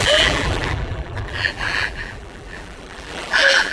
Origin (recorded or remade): remade